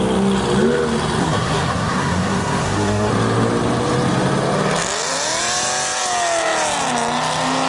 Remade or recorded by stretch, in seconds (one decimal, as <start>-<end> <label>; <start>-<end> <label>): 0.0-1.2 recorded; 1.2-3.1 remade; 3.1-7.7 recorded